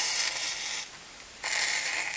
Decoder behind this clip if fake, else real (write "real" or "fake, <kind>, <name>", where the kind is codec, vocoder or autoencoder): real